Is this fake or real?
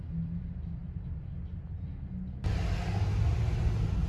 real